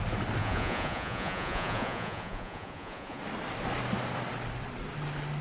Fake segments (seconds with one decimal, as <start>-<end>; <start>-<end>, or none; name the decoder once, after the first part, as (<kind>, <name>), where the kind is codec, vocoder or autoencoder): 0.4-3.2 (vocoder, Vocos)